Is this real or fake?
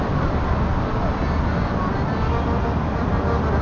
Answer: real